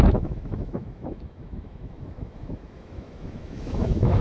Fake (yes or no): yes